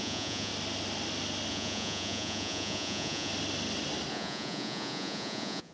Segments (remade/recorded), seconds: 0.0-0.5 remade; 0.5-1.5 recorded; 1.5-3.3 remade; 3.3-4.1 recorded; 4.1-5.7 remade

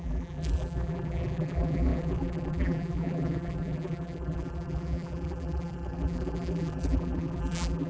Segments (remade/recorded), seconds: 0.0-7.9 remade